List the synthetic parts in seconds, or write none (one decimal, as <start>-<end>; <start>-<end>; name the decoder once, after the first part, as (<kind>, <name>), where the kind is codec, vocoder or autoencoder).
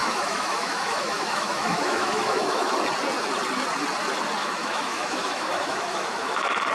0.0-2.8 (autoencoder, DAC-VAE); 4.4-6.7